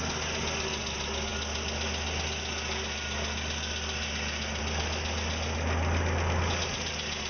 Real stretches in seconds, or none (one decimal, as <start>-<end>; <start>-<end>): 0.0-7.3